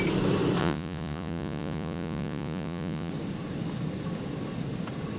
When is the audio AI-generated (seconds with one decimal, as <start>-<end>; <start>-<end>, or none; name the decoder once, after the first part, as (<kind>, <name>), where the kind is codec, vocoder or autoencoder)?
0.6-3.1 (vocoder, Vocos)